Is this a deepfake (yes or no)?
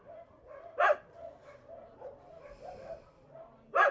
yes